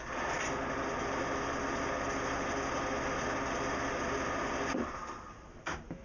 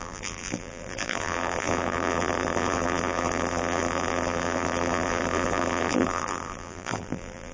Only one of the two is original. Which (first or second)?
first